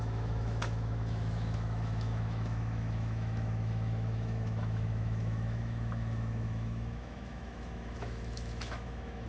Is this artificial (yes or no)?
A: yes